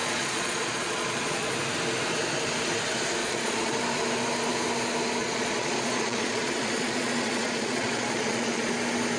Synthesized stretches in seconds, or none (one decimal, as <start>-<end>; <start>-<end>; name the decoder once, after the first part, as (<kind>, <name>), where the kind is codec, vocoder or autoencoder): 0.0-1.5 (vocoder, Vocos); 3.2-3.8; 5.2-8.7